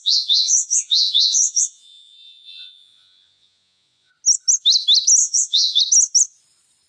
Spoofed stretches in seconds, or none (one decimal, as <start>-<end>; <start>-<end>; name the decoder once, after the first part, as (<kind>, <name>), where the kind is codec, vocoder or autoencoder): 0.0-4.1 (vocoder, Vocos); 5.2-5.8